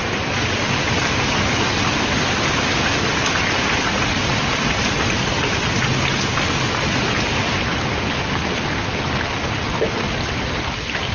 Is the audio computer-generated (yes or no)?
no